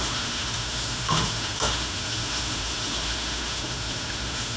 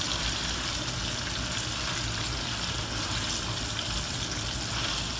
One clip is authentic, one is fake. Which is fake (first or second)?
first